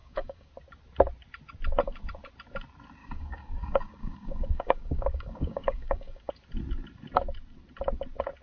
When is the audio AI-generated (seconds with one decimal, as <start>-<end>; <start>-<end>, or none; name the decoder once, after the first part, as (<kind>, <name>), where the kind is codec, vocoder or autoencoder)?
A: 0.0-0.5 (codec, DAC); 3.0-6.3